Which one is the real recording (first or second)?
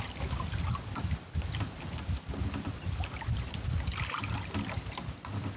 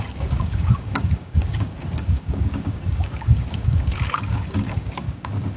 first